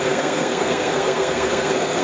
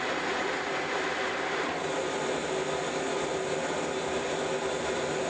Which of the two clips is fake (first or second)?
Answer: first